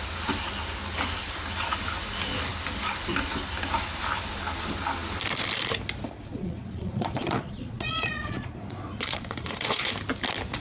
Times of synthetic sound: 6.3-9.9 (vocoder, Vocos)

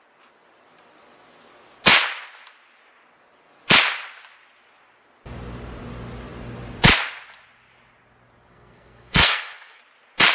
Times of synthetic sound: 8.5-9.8 (codec, SNAC)

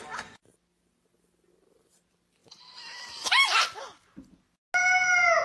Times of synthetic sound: 2.4-3.8 (vocoder, BigVGAN v2)

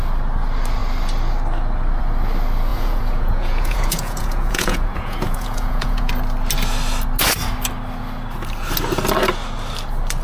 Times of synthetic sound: 2.7-6.1 (vocoder, Vocos)

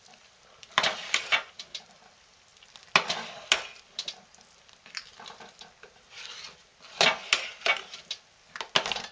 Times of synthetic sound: 0.0-2.5 (vocoder, BigVGAN v2); 6.3-6.7